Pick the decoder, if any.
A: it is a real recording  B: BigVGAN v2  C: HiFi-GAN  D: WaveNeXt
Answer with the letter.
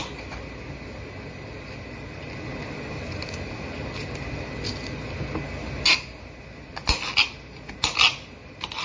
A